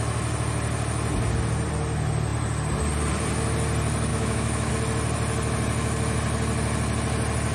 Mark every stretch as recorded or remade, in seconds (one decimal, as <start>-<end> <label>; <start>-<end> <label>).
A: 0.0-4.1 recorded; 4.1-4.7 remade; 4.7-7.5 recorded